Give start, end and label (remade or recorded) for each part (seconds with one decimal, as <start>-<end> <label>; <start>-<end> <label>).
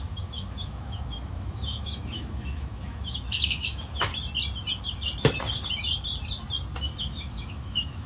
0.0-4.1 remade; 4.1-7.0 recorded; 7.0-8.1 remade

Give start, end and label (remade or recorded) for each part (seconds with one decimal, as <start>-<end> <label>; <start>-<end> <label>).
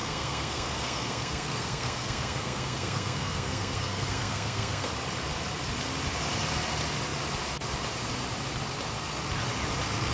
0.0-4.9 remade; 4.9-10.1 recorded